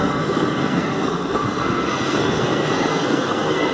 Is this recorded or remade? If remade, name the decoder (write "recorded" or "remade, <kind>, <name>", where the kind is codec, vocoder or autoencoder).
remade, codec, SNAC